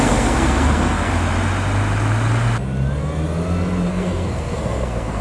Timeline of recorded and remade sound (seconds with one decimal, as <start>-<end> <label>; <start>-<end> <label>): 0.0-1.1 remade; 1.1-3.9 recorded; 3.9-5.2 remade